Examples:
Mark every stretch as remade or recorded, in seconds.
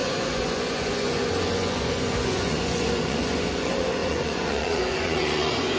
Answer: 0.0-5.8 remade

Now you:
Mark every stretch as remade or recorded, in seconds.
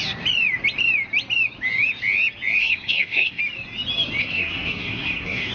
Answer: 0.0-2.6 recorded; 2.6-3.4 remade; 3.4-4.2 recorded; 4.2-5.5 remade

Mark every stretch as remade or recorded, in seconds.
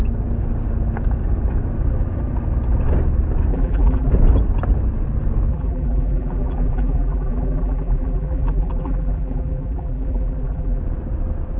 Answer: 0.0-3.5 recorded; 3.5-4.1 remade; 4.1-5.5 recorded; 5.5-10.8 remade; 10.8-11.6 recorded